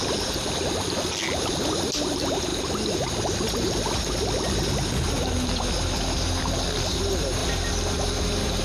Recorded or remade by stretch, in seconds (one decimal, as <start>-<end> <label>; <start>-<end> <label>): 0.0-8.6 recorded